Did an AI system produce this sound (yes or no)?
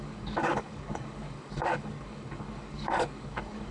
yes